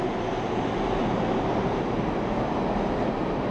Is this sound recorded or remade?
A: recorded